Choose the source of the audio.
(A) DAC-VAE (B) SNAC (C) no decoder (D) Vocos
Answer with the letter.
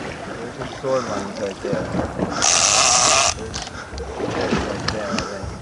C